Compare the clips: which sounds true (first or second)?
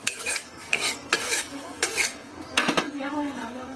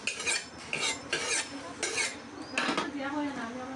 second